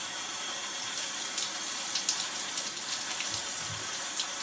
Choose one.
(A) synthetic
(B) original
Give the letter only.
A